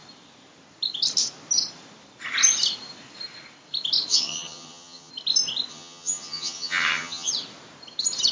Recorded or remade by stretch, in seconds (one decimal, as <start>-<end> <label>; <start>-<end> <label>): 0.0-4.1 recorded; 4.1-5.1 remade; 5.1-5.7 recorded; 5.7-7.3 remade; 7.3-8.3 recorded